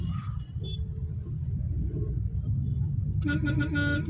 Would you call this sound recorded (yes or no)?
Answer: yes